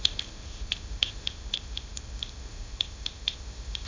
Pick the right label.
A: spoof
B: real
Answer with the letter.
A